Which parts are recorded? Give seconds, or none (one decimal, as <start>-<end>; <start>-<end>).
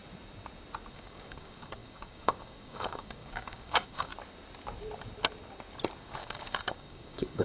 0.0-0.9; 4.1-6.0